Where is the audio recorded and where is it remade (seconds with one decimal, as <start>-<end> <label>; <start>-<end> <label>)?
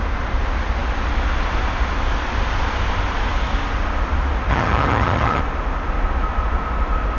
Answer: 0.0-4.5 recorded; 4.5-5.4 remade; 5.4-7.2 recorded